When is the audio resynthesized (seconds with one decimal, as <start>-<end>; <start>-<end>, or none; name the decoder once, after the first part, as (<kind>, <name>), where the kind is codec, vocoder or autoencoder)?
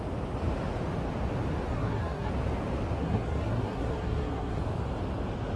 1.7-2.3 (codec, SNAC); 3.0-4.6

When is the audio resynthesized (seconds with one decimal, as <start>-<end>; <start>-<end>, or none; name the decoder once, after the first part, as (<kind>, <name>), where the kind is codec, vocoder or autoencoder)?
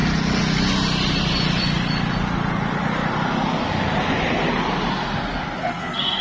5.6-6.2 (codec, SNAC)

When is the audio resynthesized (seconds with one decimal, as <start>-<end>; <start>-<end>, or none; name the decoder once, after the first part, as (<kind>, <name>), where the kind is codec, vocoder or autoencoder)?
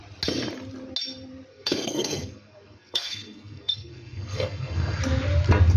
1.5-5.0 (codec, SNAC)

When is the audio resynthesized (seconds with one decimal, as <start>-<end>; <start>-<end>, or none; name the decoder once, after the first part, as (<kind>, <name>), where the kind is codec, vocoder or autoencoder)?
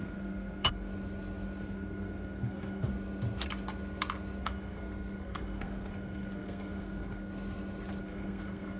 0.0-0.9 (codec, SNAC); 1.6-2.9; 4.4-7.3; 8.0-8.8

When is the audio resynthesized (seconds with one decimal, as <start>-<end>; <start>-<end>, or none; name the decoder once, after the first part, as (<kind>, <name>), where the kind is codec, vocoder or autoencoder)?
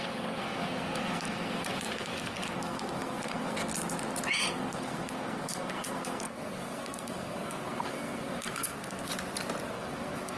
0.0-3.7 (codec, SNAC); 4.4-9.1; 9.7-10.4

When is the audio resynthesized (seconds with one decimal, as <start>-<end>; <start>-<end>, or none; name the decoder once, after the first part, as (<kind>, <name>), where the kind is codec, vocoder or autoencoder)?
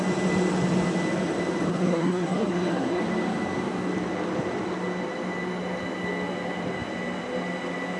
1.7-3.0 (codec, SNAC)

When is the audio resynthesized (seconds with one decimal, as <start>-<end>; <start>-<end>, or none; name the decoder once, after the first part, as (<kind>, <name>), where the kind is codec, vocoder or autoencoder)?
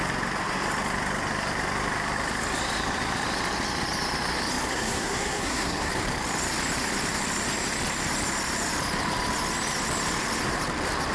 4.7-5.9 (codec, SNAC)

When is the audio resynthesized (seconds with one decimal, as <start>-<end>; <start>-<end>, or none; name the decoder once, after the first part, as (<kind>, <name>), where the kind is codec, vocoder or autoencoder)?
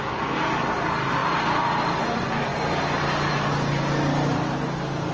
none